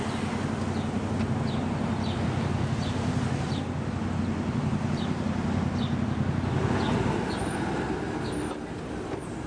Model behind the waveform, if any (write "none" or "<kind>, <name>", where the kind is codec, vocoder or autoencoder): none